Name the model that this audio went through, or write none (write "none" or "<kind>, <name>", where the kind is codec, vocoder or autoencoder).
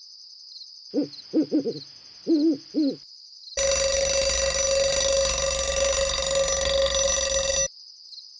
none